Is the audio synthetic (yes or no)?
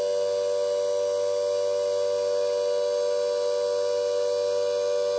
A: no